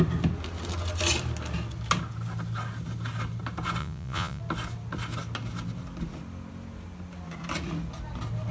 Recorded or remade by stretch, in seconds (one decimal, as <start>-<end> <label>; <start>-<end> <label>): 0.0-3.8 recorded; 3.8-4.4 remade; 4.4-8.5 recorded